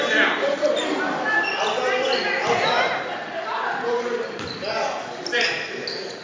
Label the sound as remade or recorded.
recorded